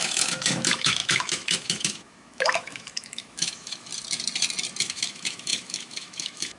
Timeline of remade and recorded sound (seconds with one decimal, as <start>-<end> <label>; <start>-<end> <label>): 0.0-3.9 remade; 3.9-4.8 recorded; 4.8-6.6 remade